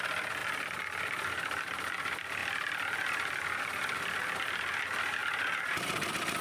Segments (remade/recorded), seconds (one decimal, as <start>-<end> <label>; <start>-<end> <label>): 0.0-6.4 recorded